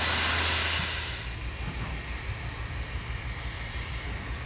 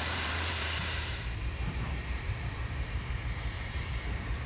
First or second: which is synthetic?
second